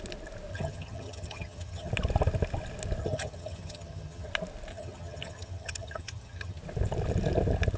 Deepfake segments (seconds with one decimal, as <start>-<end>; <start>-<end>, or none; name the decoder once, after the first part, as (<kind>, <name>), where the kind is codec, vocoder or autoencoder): 0.5-1.9 (vocoder, HiFi-GAN); 3.0-4.3; 4.7-6.6